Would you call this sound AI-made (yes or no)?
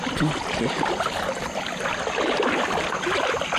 no